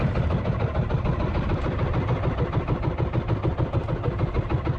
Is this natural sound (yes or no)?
yes